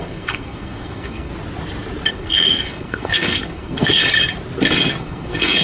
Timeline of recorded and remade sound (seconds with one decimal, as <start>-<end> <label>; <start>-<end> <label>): 0.0-1.3 remade; 1.3-2.1 recorded; 2.1-4.0 remade; 4.0-4.9 recorded; 4.9-5.6 remade